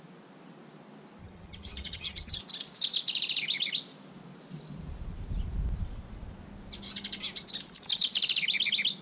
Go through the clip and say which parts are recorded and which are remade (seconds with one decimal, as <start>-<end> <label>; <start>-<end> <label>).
0.0-1.2 recorded; 1.2-2.4 remade; 2.4-9.0 recorded